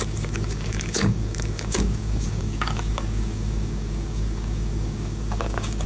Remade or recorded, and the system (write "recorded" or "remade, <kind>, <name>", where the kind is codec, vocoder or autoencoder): remade, codec, DAC